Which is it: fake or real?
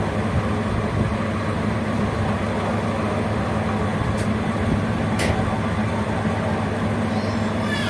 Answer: real